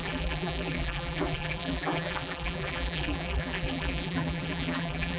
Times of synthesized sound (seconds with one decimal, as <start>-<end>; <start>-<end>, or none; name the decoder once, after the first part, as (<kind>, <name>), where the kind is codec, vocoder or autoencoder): 0.0-5.2 (vocoder, BigVGAN v2)